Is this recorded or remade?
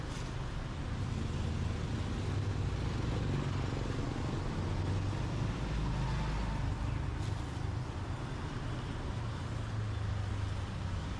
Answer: recorded